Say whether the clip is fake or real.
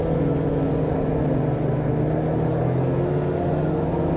real